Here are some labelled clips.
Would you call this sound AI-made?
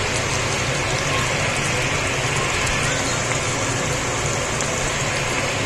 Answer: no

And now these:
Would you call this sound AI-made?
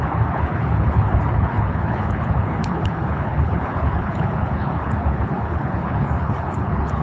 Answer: yes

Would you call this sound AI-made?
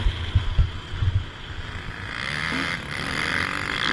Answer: no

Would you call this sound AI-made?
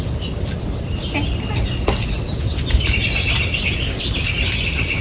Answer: no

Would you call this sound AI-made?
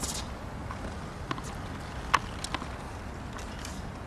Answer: no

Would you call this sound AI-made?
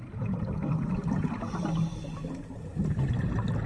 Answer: no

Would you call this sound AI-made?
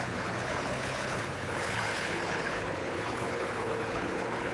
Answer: yes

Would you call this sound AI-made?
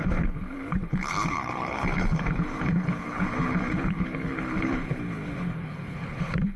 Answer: yes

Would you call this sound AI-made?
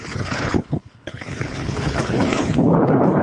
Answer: yes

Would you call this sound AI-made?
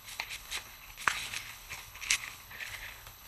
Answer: yes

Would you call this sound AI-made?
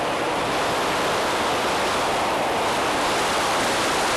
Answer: no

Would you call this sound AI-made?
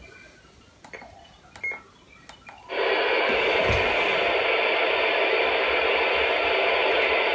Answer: no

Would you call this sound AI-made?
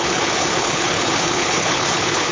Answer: yes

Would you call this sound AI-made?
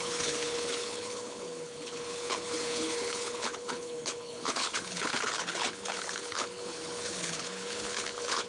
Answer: yes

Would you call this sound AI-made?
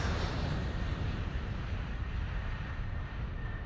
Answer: no